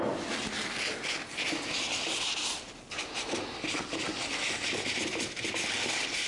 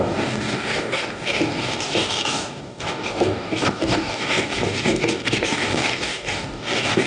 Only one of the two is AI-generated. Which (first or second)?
second